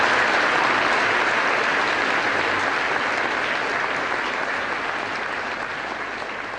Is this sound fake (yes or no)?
no